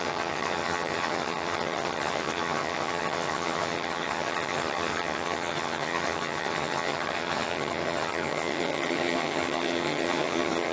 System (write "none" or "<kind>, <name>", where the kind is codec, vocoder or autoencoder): vocoder, HiFi-GAN